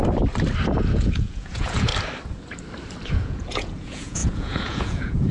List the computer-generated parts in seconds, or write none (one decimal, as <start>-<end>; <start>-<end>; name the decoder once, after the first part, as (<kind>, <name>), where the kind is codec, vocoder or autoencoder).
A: 0.9-1.9 (vocoder, Vocos); 3.1-5.3